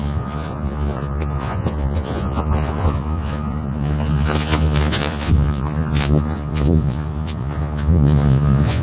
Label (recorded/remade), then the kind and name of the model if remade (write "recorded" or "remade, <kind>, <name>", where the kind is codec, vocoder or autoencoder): remade, vocoder, Vocos